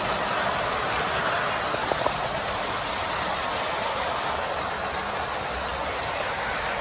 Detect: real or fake real